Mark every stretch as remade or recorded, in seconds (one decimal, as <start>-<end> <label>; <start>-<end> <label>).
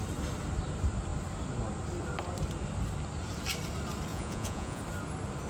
0.0-4.1 recorded; 4.1-4.8 remade; 4.8-5.5 recorded